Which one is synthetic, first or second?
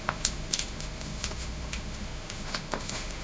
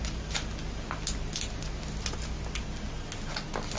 first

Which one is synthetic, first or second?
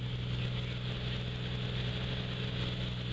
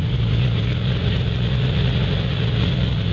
second